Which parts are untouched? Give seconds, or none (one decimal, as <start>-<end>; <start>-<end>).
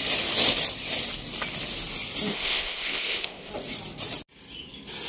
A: 0.0-2.3; 3.5-5.1